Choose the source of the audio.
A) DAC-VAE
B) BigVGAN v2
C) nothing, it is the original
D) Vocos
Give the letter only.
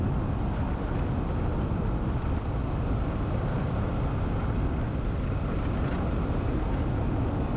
C